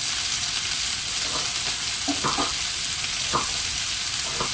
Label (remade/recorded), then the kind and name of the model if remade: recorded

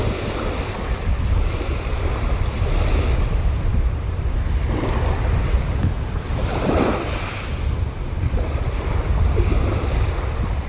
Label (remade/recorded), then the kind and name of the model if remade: recorded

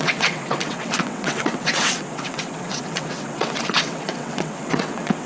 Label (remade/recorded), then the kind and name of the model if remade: remade, vocoder, WaveNeXt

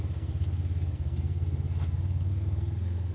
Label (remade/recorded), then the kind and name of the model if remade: remade, codec, SNAC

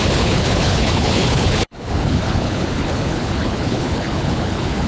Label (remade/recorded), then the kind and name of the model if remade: remade, codec, HILCodec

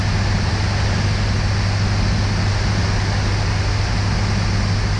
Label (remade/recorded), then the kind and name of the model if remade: recorded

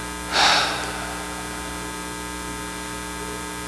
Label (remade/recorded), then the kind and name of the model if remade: recorded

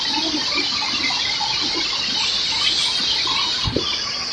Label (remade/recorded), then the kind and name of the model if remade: recorded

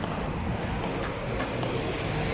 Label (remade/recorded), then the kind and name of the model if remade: recorded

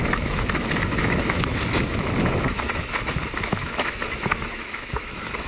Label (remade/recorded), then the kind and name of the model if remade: remade, autoencoder, DAC-VAE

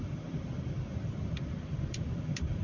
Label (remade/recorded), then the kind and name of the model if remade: remade, vocoder, BigVGAN v2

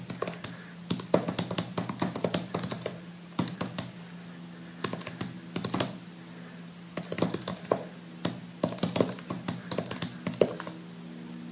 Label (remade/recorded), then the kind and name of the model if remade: recorded